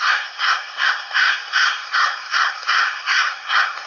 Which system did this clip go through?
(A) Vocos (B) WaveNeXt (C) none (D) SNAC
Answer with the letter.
D